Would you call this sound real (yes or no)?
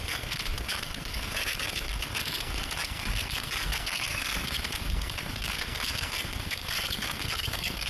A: no